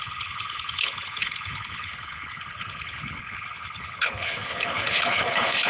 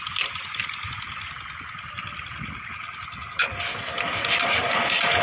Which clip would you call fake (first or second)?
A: first